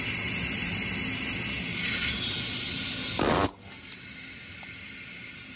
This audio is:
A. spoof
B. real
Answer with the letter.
B